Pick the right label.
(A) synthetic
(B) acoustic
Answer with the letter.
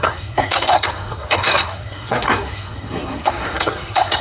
A